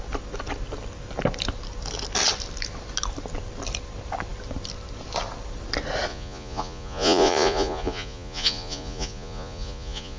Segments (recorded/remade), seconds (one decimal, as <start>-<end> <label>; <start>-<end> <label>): 0.0-6.1 recorded; 6.1-10.2 remade